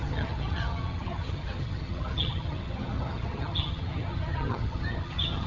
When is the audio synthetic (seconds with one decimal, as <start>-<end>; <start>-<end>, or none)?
0.0-5.5